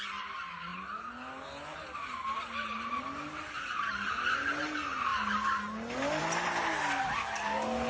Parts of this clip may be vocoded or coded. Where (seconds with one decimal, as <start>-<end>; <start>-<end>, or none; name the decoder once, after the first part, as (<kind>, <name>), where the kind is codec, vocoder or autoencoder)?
none